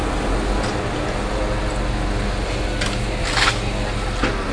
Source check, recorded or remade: recorded